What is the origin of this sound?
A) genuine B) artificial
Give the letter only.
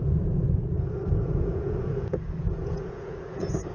B